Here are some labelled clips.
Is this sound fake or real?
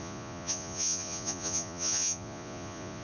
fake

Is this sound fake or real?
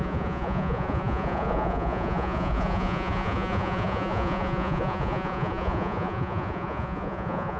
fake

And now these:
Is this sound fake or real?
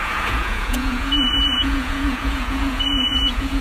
fake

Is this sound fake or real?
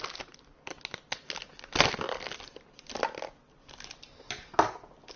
real